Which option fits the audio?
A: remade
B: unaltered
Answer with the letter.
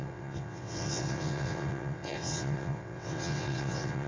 A